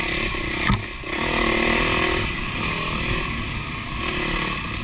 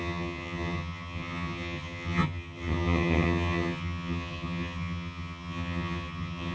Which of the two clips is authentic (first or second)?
first